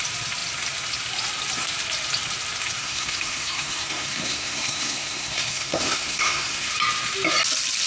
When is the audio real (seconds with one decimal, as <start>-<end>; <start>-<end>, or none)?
0.0-2.8; 6.7-7.9